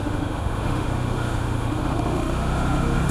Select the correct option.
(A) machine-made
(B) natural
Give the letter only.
A